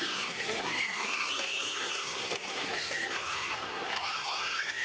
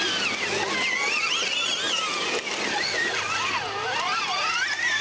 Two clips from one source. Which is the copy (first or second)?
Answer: first